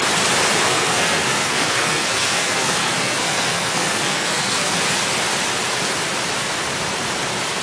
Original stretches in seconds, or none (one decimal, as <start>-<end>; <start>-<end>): 0.0-0.6; 4.8-7.6